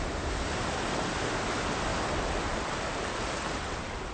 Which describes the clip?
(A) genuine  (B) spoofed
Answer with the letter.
A